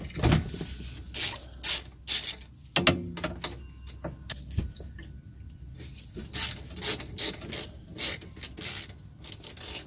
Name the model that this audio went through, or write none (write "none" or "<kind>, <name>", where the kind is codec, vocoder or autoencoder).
none